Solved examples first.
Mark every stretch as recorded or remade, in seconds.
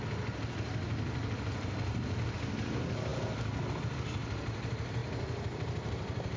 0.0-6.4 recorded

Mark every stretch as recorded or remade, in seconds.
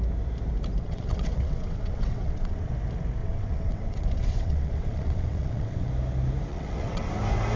0.0-0.8 recorded; 0.8-2.7 remade; 2.7-3.2 recorded; 3.2-5.9 remade; 5.9-6.5 recorded; 6.5-7.1 remade; 7.1-7.6 recorded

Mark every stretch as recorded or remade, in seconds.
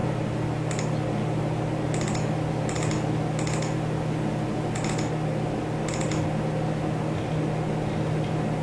0.0-8.6 recorded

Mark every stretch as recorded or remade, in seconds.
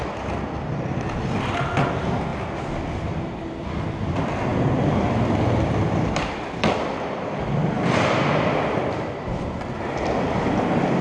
0.0-11.0 recorded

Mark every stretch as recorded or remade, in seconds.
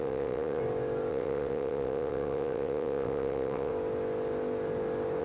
0.0-0.6 remade; 0.6-1.1 recorded; 1.1-3.7 remade; 3.7-5.2 recorded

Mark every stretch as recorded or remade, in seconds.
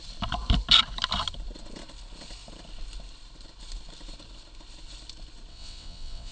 0.0-5.5 recorded; 5.5-6.3 remade